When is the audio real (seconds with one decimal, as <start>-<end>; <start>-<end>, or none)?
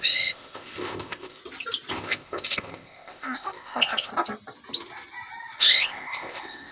1.4-1.9; 4.1-5.6